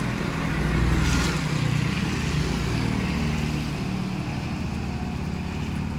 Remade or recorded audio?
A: recorded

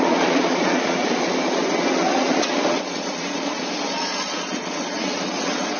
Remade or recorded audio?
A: remade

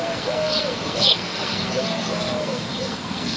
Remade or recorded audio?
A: remade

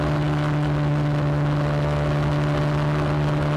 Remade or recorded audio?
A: recorded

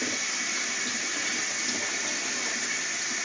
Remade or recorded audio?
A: remade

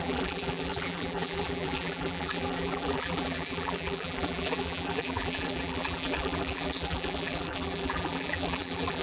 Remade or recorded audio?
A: remade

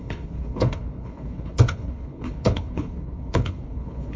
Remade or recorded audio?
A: remade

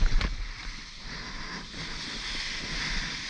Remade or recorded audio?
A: recorded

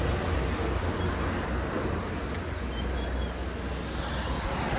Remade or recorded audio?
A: recorded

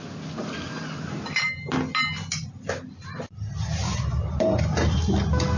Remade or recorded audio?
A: recorded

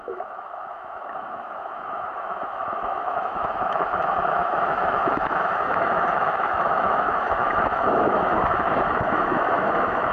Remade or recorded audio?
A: remade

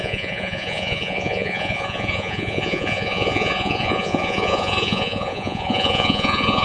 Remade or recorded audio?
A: remade